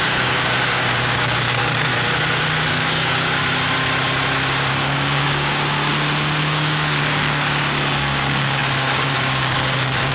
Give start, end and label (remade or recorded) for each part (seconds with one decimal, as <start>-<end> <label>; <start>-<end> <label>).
0.0-1.9 remade; 1.9-2.7 recorded; 2.7-3.4 remade; 3.4-4.7 recorded; 4.7-5.9 remade; 5.9-6.4 recorded; 6.4-10.1 remade